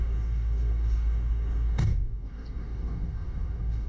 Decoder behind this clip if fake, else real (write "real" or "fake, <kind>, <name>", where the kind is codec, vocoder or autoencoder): fake, codec, DAC